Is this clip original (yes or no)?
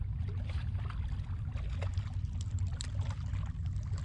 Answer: yes